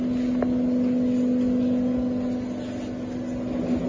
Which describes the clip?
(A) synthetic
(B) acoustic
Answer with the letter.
B